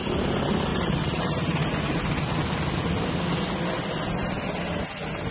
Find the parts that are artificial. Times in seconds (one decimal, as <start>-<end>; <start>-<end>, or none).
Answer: 0.7-2.0